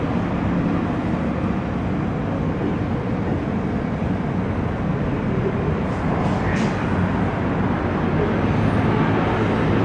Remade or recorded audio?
recorded